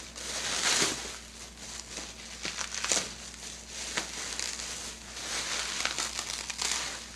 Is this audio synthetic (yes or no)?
no